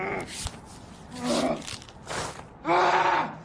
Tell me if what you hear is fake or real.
real